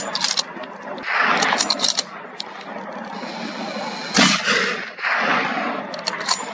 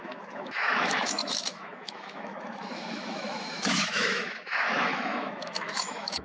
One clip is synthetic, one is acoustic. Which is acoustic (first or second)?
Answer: first